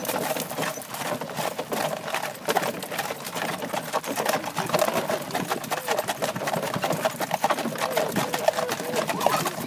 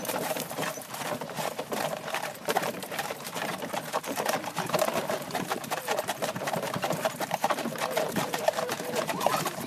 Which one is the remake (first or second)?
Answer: second